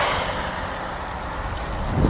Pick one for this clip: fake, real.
real